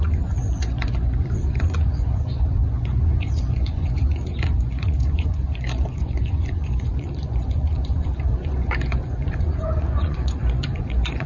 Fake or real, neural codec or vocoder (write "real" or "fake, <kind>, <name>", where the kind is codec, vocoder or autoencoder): fake, vocoder, Vocos